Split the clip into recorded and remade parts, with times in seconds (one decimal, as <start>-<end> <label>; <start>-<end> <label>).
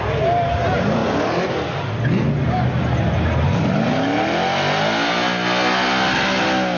0.0-6.8 recorded